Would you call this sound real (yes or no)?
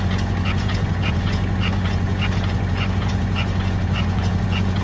no